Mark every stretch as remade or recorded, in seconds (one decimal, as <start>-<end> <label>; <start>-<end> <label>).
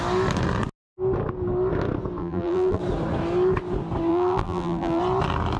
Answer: 0.0-2.2 recorded; 2.2-2.8 remade; 2.8-4.1 recorded; 4.1-5.0 remade; 5.0-5.6 recorded